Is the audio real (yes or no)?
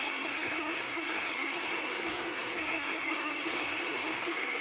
no